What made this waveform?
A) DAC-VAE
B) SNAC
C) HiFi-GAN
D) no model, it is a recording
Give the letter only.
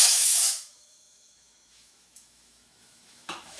A